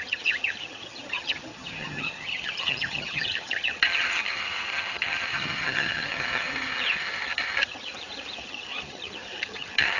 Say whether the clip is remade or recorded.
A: remade